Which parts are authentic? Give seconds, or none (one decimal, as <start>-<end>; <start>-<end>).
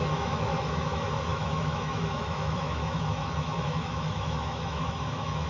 none